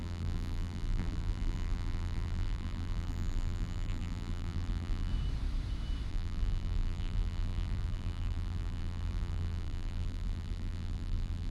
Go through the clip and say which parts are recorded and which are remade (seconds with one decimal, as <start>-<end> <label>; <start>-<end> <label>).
0.0-5.1 remade; 5.1-6.1 recorded; 6.1-11.5 remade